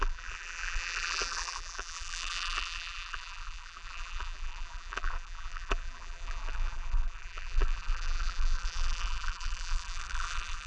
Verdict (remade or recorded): remade